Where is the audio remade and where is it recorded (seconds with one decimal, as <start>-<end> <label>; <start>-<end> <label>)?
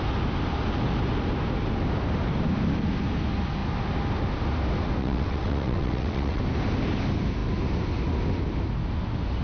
0.0-5.0 recorded; 5.0-6.4 remade; 6.4-9.4 recorded